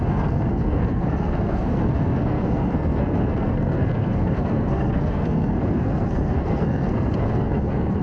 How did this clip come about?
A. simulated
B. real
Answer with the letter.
A